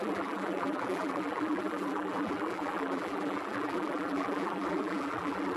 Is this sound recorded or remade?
remade